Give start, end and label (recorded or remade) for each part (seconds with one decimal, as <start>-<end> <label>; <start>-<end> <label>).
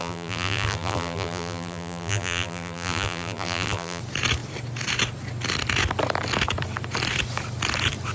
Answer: 0.0-4.0 remade; 4.0-8.1 recorded